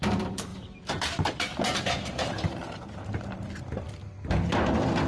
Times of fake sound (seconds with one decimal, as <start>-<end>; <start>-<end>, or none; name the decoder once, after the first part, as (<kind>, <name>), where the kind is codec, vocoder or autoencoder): 0.5-3.6 (vocoder, BigVGAN v2)